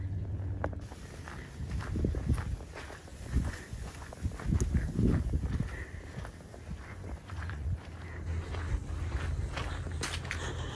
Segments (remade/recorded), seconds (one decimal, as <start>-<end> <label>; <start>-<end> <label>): 0.0-3.1 recorded; 3.1-4.1 remade; 4.1-6.9 recorded; 6.9-7.7 remade; 7.7-10.7 recorded